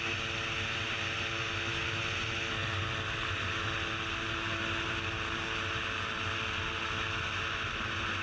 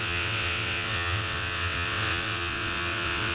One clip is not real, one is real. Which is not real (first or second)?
second